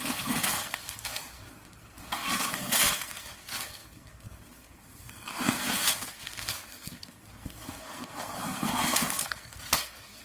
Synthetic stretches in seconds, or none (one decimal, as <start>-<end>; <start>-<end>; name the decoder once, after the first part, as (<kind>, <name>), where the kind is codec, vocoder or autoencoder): 0.0-10.2 (codec, SNAC)